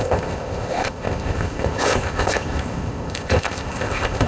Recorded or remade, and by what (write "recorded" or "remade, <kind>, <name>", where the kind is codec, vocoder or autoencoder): remade, codec, ZipCodec